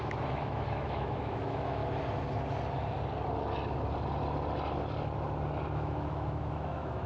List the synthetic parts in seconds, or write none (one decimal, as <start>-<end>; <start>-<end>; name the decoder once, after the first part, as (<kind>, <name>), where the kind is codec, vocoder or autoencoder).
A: 0.0-1.8 (autoencoder, DAC-VAE); 5.7-7.1